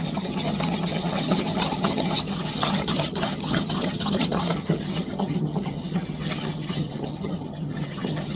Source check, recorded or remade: remade